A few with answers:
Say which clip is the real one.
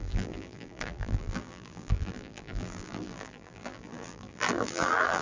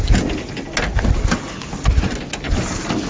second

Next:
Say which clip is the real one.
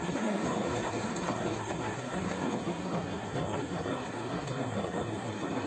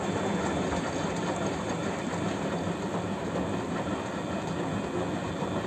second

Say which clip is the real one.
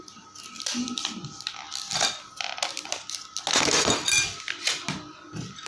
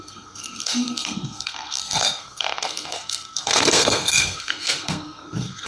first